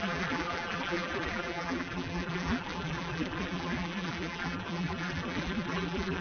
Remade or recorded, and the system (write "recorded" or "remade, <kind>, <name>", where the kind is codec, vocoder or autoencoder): remade, vocoder, BigVGAN v2